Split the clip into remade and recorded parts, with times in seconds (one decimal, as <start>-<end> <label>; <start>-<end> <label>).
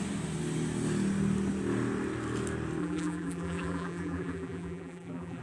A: 0.0-2.8 recorded; 2.8-5.4 remade